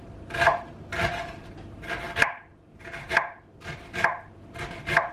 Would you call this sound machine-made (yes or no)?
no